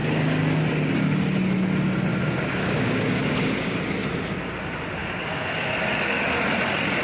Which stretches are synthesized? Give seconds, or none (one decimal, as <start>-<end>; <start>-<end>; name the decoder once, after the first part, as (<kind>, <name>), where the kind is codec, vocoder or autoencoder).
2.1-3.8 (codec, DAC); 5.0-5.7